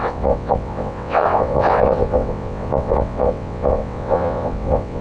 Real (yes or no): no